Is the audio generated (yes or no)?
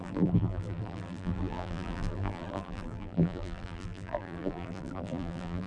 yes